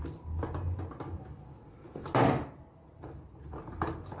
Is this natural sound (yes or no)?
yes